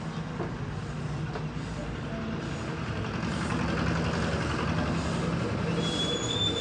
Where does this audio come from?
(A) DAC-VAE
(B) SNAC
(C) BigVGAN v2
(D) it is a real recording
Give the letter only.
D